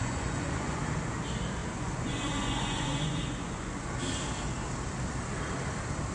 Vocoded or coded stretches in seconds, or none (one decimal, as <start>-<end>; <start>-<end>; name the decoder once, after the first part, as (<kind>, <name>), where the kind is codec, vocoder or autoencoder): 0.0-0.8 (vocoder, Vocos); 1.6-3.9